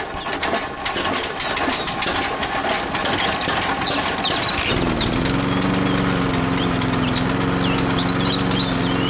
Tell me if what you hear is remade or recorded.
recorded